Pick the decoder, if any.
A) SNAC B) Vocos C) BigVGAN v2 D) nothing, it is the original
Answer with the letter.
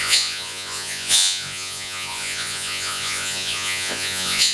B